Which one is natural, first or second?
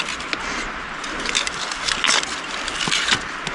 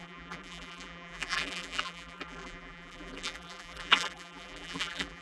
first